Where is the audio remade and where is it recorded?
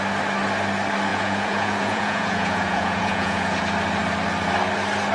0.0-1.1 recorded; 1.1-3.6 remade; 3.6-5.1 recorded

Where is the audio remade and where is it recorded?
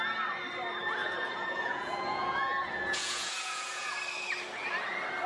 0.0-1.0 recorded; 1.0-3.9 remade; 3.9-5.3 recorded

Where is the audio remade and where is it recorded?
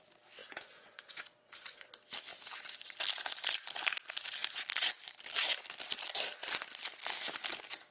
0.0-0.4 recorded; 0.4-1.9 remade; 1.9-7.9 recorded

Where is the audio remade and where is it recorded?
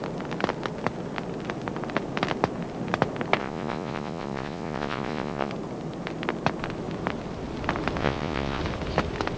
0.0-3.4 recorded; 3.4-5.5 remade; 5.5-8.0 recorded; 8.0-8.6 remade; 8.6-9.4 recorded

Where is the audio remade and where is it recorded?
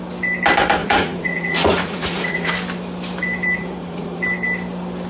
0.0-0.8 recorded; 0.8-2.5 remade; 2.5-3.6 recorded; 3.6-4.2 remade; 4.2-5.1 recorded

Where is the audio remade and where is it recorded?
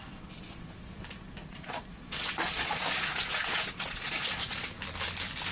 0.0-1.4 recorded; 1.4-4.7 remade; 4.7-5.5 recorded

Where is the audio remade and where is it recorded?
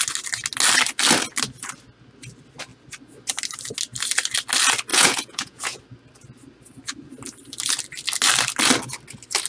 0.0-4.9 recorded; 4.9-5.8 remade; 5.8-9.5 recorded